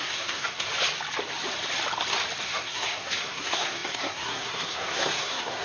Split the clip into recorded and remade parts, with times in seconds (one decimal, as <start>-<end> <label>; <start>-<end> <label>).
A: 0.0-0.7 remade; 0.7-2.4 recorded; 2.4-5.6 remade